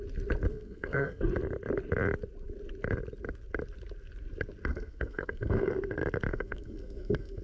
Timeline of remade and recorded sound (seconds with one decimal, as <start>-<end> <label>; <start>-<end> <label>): 0.0-0.5 recorded; 0.5-1.2 remade; 1.2-4.7 recorded; 4.7-5.7 remade; 5.7-6.3 recorded; 6.3-7.4 remade